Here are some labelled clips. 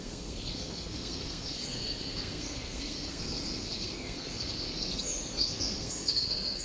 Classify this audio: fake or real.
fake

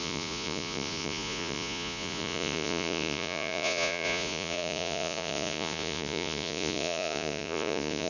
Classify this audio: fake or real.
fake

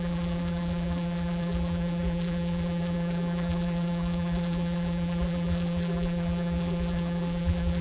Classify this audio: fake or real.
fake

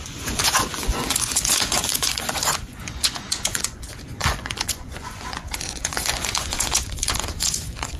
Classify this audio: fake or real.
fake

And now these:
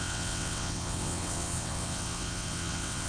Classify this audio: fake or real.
fake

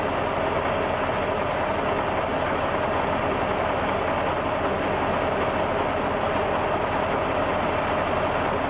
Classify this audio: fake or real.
real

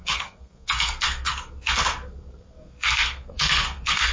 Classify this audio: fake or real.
fake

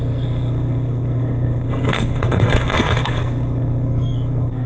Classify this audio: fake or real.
fake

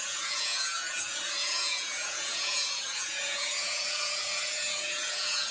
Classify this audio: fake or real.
fake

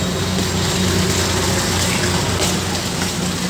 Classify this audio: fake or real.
real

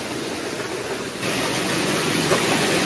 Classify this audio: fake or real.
fake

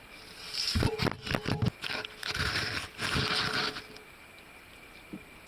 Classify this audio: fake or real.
real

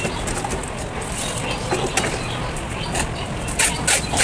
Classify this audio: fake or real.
real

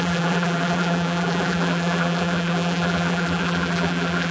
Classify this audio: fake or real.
fake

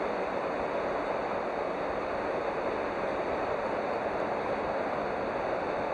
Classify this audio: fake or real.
real